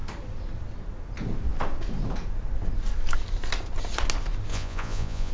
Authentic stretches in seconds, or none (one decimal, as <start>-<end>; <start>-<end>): 0.0-4.5